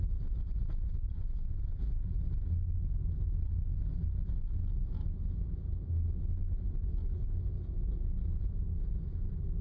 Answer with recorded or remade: recorded